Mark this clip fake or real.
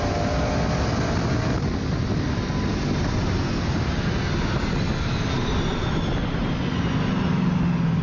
real